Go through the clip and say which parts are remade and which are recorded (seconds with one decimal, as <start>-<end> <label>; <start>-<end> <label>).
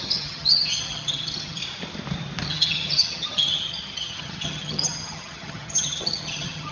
0.0-1.6 remade; 1.6-2.5 recorded; 2.5-6.7 remade